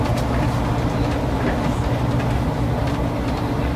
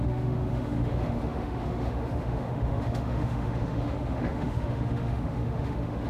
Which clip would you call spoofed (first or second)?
second